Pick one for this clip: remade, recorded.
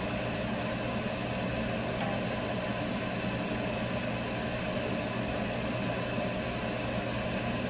recorded